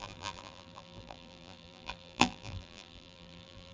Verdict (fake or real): fake